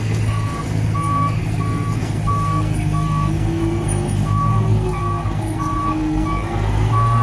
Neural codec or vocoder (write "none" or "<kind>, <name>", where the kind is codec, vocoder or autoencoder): codec, SNAC